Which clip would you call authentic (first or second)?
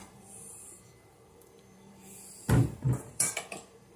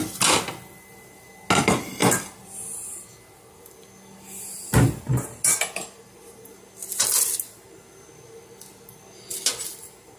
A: second